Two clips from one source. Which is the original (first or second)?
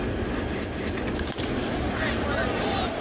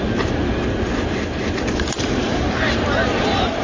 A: first